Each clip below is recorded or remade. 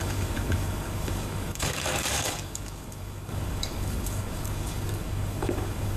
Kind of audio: remade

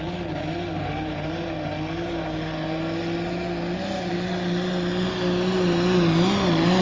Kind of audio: recorded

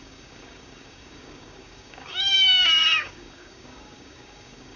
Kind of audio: remade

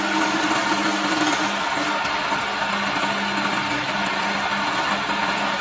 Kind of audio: recorded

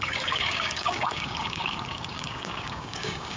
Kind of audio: remade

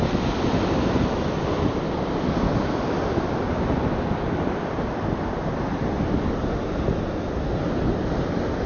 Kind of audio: recorded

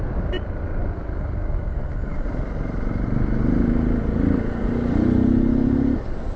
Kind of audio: recorded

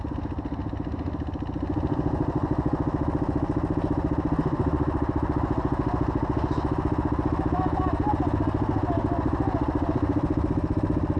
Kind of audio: recorded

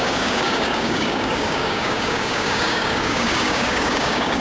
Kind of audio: remade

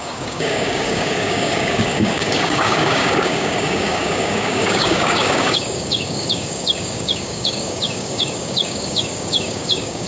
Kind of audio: remade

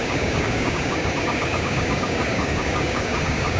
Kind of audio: remade